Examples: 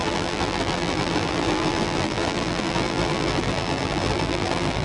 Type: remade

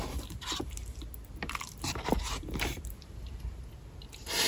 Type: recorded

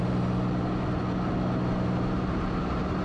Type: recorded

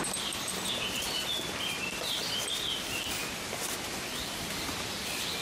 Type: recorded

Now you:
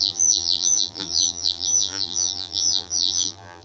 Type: remade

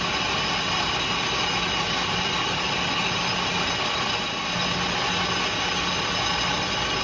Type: recorded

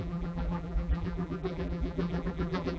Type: remade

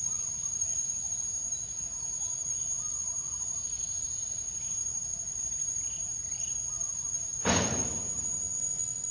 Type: remade